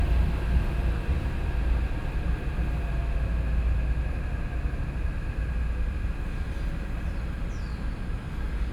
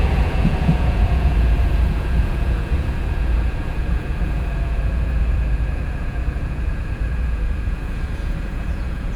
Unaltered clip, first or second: first